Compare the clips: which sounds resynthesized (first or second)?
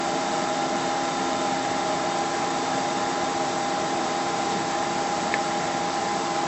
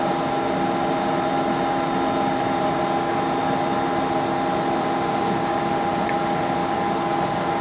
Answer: first